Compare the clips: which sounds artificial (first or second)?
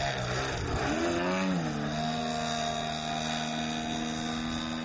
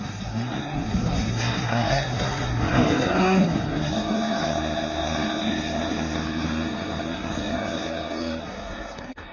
second